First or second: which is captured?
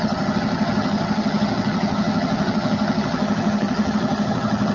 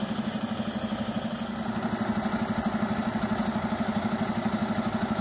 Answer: second